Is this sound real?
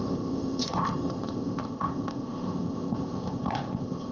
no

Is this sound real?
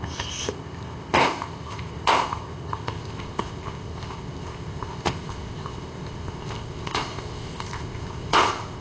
no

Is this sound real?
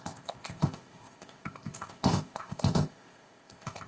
no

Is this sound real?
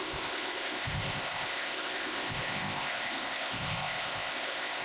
no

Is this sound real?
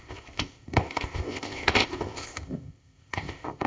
no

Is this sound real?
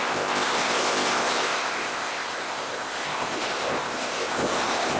no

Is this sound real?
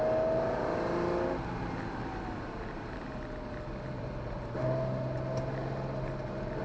yes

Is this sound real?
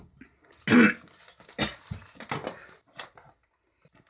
yes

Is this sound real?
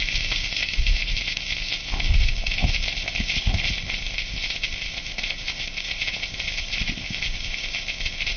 no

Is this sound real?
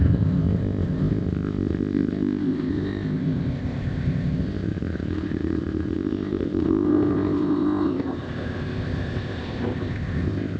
no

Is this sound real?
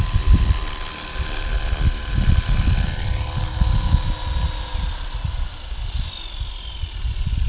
yes